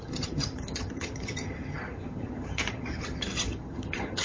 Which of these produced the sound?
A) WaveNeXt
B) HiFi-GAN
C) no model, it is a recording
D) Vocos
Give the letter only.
B